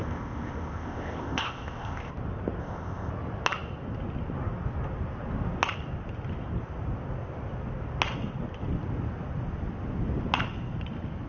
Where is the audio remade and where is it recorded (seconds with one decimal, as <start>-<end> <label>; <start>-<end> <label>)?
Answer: 0.0-2.1 remade; 2.1-2.6 recorded; 2.6-3.1 remade; 3.1-11.3 recorded